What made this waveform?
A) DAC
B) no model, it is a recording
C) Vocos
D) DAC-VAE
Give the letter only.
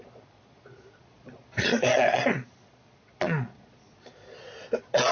C